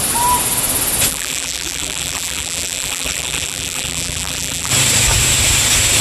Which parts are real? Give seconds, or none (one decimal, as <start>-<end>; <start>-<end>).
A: 0.0-1.1; 4.7-6.0